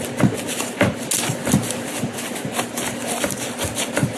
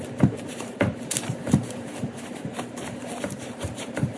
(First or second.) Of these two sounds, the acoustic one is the first